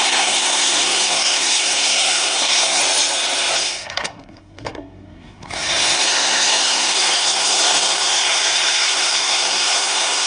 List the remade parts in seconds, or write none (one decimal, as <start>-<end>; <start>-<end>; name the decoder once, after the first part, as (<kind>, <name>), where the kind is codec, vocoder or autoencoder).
0.0-2.8 (codec, SNAC); 3.5-10.3